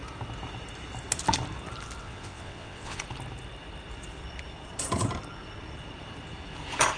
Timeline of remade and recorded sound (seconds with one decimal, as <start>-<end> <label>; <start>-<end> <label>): 0.0-2.0 recorded; 2.0-3.0 remade; 3.0-7.0 recorded